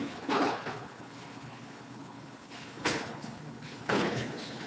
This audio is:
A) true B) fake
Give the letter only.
B